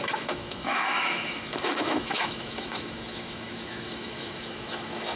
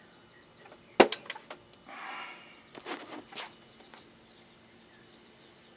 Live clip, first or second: second